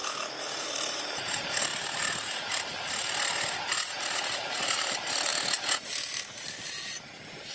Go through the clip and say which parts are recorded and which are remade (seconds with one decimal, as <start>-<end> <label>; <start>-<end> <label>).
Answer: 0.0-0.6 recorded; 0.6-1.7 remade; 1.7-4.0 recorded; 4.0-5.3 remade; 5.3-7.5 recorded